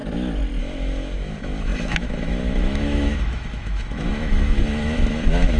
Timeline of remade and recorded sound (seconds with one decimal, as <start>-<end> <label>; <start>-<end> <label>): 0.0-0.6 recorded; 0.6-5.6 remade